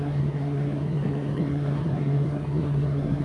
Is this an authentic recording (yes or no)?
no